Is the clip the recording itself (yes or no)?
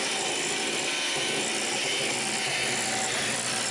yes